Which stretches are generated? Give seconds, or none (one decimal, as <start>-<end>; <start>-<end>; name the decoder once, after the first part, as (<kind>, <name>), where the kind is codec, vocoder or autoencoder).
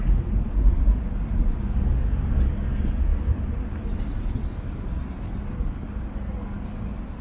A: 3.1-4.3 (vocoder, BigVGAN v2)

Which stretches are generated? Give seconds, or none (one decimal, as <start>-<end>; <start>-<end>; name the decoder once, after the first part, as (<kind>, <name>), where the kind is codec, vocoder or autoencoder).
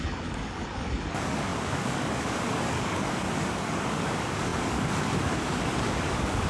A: 0.0-6.5 (codec, DAC)